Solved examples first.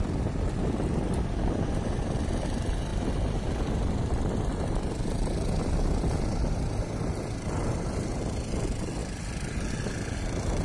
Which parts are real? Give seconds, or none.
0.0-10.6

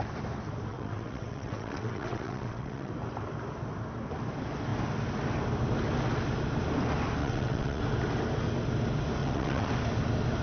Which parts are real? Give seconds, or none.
0.0-0.7; 2.9-7.2; 7.8-9.2; 9.7-10.4